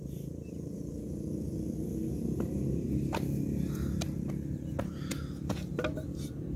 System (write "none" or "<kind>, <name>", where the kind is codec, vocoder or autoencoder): none